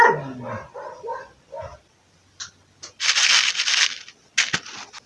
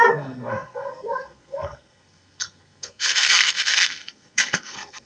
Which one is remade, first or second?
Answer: second